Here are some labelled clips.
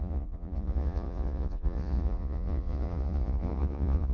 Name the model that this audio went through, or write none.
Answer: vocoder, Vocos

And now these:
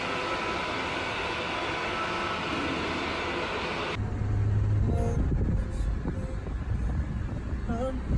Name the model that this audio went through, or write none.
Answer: none